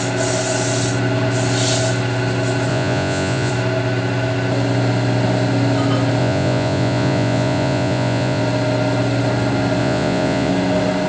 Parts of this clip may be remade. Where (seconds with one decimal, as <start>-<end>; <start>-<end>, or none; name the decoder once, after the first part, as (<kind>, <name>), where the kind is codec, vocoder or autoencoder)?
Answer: 2.7-3.5 (vocoder, Vocos); 6.2-8.4; 9.8-10.5